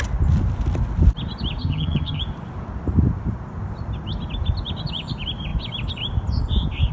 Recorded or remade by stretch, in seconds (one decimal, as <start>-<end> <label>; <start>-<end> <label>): 0.0-1.6 recorded; 1.6-2.2 remade; 2.2-6.9 recorded